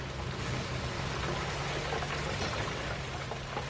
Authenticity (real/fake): real